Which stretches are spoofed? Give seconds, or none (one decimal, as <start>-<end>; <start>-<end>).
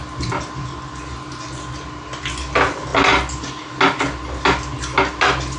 none